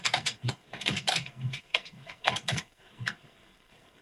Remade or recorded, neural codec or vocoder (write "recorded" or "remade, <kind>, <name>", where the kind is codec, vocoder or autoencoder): remade, codec, SNAC